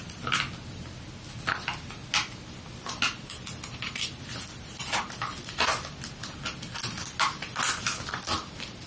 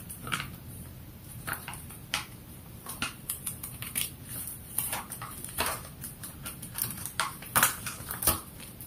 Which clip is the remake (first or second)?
second